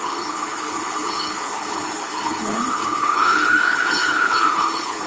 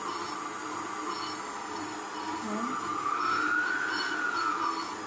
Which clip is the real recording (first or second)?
second